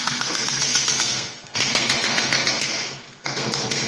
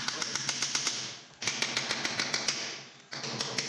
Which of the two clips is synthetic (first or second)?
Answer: first